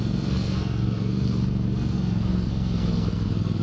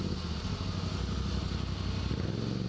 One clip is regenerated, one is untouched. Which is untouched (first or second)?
second